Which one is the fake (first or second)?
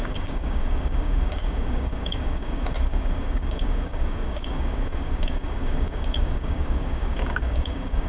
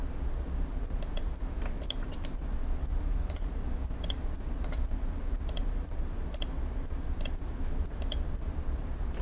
first